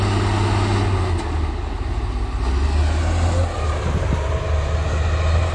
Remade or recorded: recorded